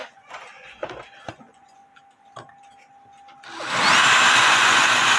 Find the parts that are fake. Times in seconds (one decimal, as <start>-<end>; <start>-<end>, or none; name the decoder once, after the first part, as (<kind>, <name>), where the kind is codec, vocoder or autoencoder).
0.0-0.8 (vocoder, Vocos); 1.3-1.8; 4.4-5.2